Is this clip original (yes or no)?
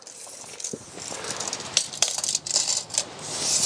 yes